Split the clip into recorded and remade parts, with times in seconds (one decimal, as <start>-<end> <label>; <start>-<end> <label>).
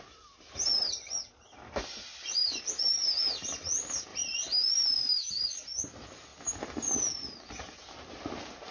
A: 0.0-8.7 recorded